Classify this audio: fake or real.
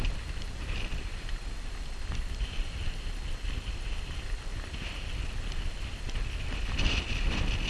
fake